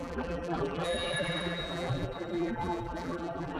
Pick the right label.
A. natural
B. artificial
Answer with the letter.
B